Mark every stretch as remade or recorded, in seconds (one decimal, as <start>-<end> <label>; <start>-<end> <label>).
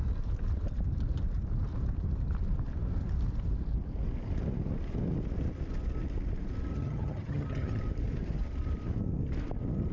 0.0-6.7 recorded; 6.7-7.8 remade; 7.8-9.9 recorded